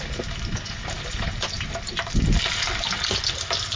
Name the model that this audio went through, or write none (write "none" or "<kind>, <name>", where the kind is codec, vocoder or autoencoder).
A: none